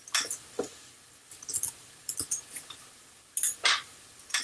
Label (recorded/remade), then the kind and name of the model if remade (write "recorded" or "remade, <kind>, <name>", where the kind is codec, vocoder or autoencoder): recorded